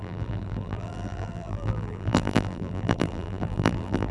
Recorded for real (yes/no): no